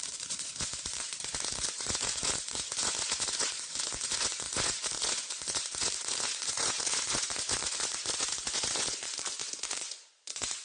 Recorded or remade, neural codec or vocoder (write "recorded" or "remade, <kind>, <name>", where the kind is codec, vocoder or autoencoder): remade, vocoder, Vocos